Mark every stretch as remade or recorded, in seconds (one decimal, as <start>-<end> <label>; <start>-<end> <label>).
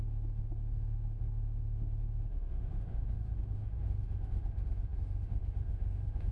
0.0-6.3 remade